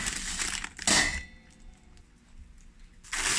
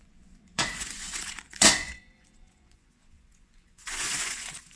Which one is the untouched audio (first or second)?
first